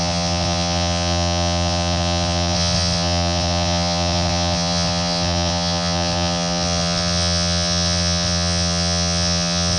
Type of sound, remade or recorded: remade